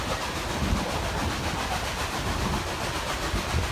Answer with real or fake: real